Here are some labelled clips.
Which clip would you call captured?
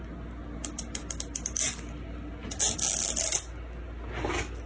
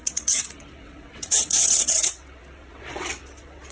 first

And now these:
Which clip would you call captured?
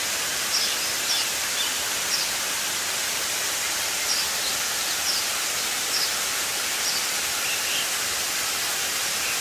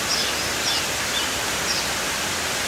second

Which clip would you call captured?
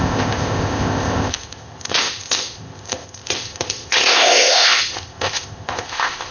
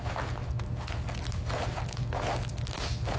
second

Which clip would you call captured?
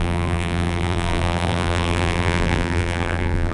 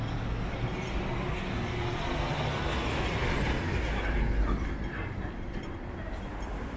second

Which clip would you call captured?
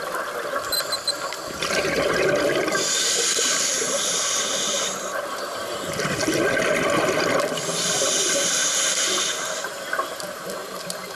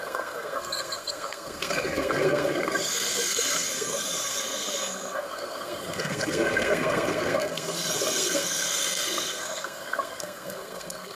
first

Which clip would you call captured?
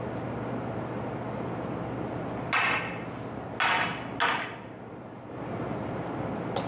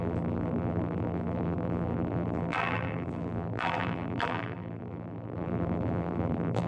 first